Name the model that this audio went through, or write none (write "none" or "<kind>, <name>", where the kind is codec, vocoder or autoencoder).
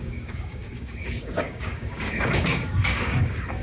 codec, DAC